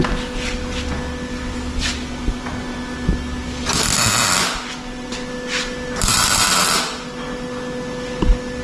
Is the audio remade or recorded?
recorded